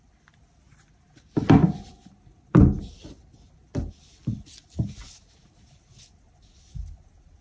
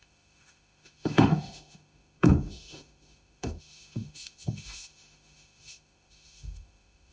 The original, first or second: first